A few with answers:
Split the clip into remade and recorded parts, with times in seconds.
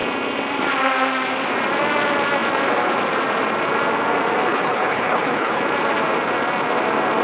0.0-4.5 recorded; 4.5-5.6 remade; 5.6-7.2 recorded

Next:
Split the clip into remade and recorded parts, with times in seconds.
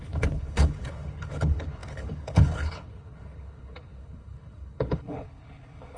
0.0-6.0 remade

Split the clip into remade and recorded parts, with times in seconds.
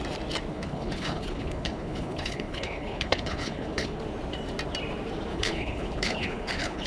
0.0-0.5 recorded; 0.5-4.0 remade; 4.0-5.3 recorded; 5.3-6.9 remade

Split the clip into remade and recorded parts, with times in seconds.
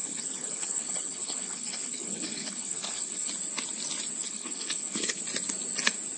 0.0-3.3 remade; 3.3-4.2 recorded; 4.2-5.2 remade; 5.2-6.2 recorded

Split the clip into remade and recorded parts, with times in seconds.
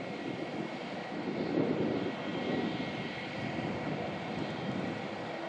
0.0-5.5 recorded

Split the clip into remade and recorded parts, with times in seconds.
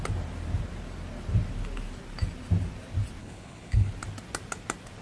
0.0-3.2 recorded; 3.2-3.9 remade; 3.9-5.0 recorded